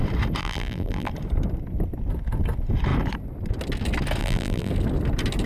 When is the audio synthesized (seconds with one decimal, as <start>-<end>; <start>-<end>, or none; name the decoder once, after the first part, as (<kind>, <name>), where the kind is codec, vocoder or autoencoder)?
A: 0.4-1.1 (vocoder, BigVGAN v2); 4.2-4.7